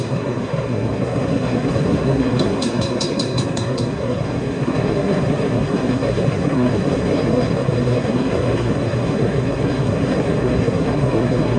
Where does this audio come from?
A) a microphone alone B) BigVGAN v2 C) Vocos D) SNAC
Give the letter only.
D